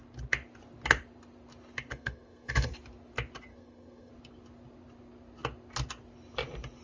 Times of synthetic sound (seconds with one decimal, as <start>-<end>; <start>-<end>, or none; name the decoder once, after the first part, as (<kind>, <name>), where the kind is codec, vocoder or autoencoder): 1.9-2.7 (codec, SNAC); 3.5-4.1